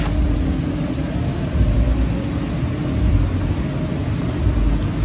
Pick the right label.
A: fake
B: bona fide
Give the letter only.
B